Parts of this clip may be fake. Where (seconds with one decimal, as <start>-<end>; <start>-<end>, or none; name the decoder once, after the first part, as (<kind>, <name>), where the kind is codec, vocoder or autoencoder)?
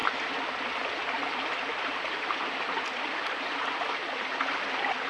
none